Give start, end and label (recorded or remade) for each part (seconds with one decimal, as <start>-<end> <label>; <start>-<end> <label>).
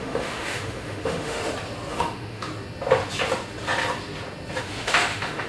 0.0-1.4 remade; 1.4-1.9 recorded; 1.9-2.5 remade; 2.5-4.6 recorded; 4.6-5.5 remade